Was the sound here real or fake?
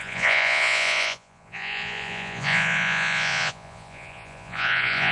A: fake